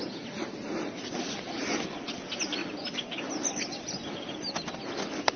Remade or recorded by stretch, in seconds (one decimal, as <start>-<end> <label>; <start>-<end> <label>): 0.0-5.4 recorded